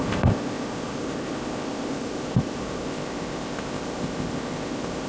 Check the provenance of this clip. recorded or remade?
remade